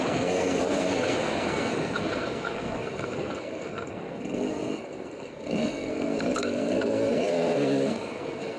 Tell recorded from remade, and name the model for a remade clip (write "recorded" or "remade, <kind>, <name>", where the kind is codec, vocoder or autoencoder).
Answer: remade, codec, SNAC